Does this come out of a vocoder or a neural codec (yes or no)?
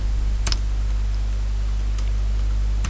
no